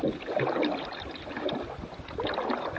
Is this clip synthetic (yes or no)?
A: yes